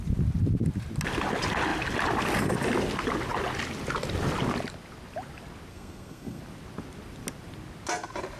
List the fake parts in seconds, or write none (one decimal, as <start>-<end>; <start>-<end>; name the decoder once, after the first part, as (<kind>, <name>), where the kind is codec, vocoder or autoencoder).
5.7-6.4 (codec, SNAC)